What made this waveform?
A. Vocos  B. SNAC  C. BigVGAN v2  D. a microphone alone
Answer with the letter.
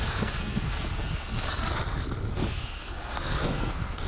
B